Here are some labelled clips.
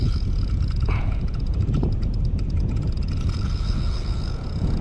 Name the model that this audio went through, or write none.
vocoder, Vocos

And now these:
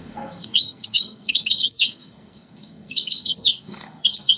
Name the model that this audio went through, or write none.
codec, SNAC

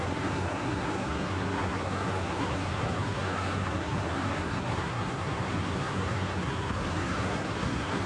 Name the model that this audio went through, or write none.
codec, SNAC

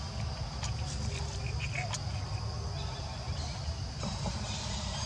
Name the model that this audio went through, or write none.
none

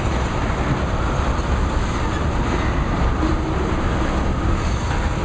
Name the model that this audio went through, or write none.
none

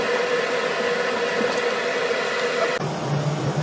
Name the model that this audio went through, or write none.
none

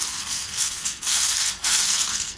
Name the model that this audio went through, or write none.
codec, SNAC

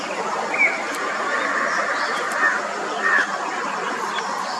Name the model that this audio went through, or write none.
none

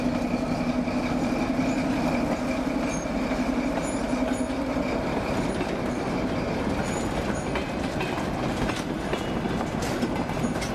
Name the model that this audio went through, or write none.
none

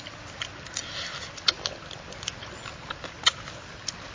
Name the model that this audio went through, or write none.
none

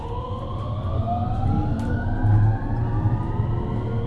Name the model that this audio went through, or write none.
none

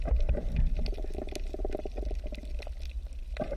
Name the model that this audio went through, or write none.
none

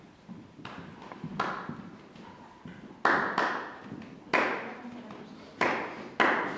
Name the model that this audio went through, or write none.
none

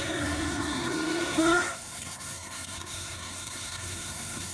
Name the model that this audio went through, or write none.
codec, SNAC